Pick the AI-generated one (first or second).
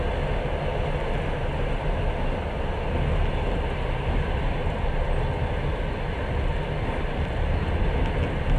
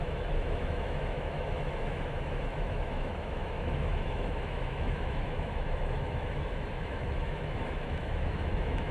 second